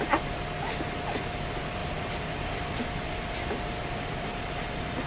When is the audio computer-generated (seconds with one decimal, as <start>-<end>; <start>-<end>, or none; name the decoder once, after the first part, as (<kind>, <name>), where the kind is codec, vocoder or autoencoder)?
1.8-2.8 (vocoder, BigVGAN v2)